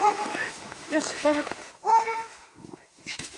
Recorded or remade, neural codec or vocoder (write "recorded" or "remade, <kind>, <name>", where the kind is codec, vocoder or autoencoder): remade, autoencoder, DAC-VAE